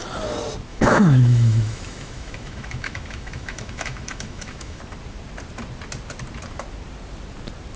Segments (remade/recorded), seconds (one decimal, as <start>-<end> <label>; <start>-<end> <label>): 0.0-0.7 recorded; 0.7-4.8 remade; 4.8-7.8 recorded